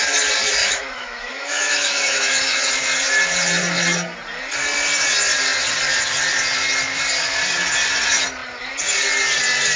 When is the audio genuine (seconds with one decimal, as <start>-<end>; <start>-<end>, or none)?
0.0-0.6; 2.7-9.8